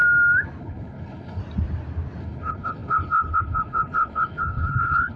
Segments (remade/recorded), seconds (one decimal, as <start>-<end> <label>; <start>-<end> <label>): 0.0-0.6 recorded; 0.6-1.4 remade; 1.4-2.2 recorded; 2.2-5.2 remade